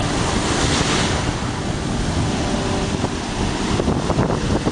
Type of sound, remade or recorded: recorded